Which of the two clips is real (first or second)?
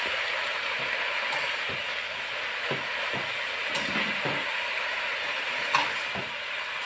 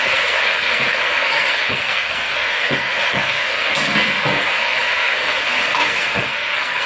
first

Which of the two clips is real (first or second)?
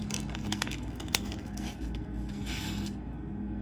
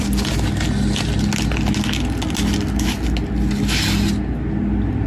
second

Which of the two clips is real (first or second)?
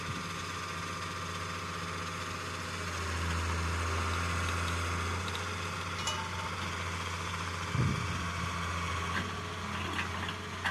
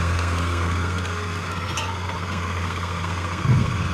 first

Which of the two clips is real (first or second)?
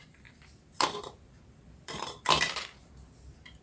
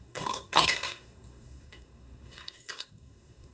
first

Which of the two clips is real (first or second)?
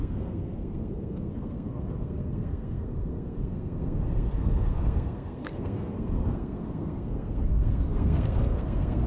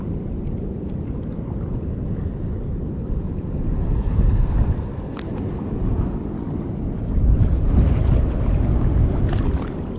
second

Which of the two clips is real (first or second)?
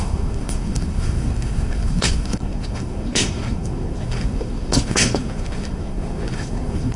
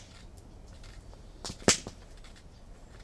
second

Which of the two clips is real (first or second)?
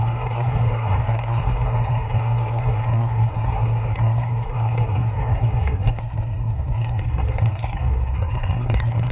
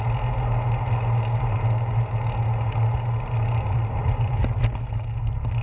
second